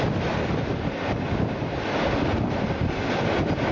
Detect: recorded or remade recorded